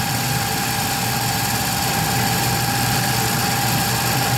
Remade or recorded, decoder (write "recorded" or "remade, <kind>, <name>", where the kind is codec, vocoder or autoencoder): recorded